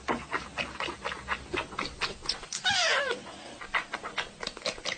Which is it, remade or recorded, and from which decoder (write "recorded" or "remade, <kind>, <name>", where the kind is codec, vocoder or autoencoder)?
recorded